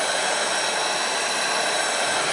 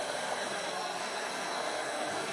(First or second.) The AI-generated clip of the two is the second